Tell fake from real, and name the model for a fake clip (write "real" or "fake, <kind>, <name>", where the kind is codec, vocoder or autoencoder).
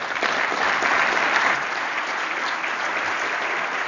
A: real